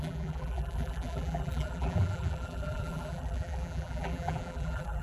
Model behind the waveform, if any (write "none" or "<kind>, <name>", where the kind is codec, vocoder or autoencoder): vocoder, BigVGAN v2